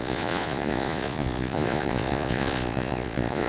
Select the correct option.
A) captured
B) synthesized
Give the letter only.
B